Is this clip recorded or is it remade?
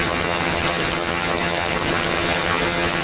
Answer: remade